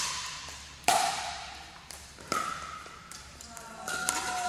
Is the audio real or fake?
fake